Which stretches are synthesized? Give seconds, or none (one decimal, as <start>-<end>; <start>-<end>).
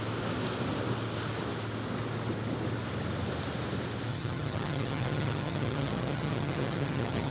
4.1-7.3